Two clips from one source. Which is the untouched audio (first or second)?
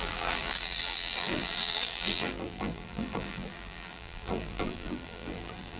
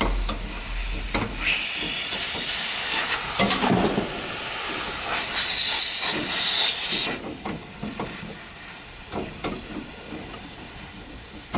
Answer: second